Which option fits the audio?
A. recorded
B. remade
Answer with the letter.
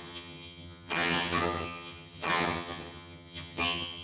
B